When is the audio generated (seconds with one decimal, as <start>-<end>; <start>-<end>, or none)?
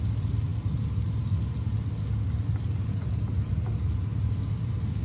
none